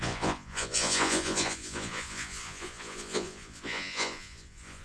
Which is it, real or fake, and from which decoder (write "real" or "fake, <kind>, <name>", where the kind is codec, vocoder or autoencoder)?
fake, vocoder, Vocos